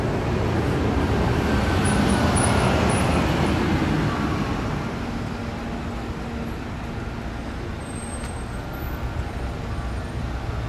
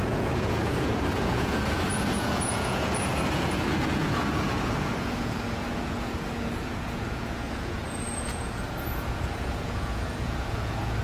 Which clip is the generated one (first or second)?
second